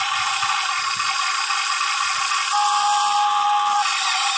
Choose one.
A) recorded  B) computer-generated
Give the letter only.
A